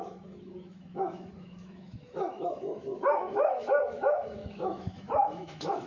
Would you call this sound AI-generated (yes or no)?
yes